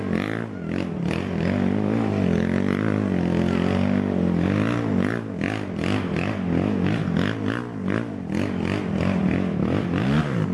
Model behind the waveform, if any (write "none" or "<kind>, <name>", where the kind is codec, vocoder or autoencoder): none